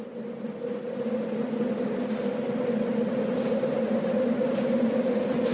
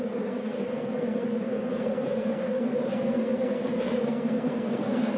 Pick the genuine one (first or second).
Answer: first